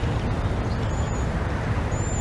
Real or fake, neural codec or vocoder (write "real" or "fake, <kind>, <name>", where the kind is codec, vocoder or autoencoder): real